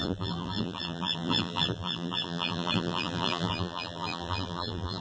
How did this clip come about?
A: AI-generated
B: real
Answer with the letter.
A